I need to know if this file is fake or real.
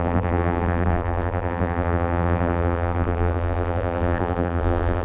fake